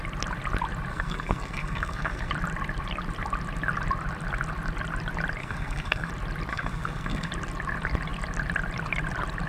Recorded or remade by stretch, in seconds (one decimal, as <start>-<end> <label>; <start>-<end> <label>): 0.0-0.9 recorded; 0.9-2.3 remade; 2.3-5.4 recorded; 5.4-6.1 remade; 6.1-6.5 recorded; 6.5-7.3 remade; 7.3-9.5 recorded